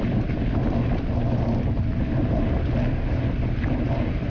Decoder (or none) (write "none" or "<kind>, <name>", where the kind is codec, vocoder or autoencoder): none